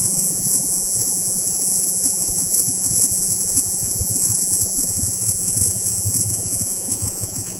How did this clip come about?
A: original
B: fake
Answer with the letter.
B